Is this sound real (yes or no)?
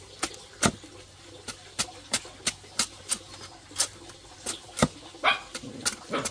yes